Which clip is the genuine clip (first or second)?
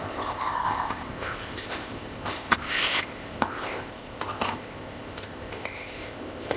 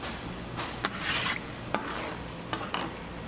second